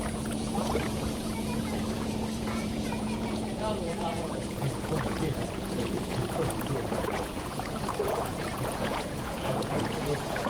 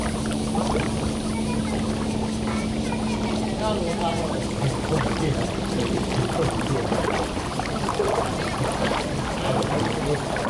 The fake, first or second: first